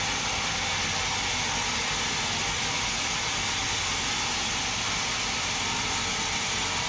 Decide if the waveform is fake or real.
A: real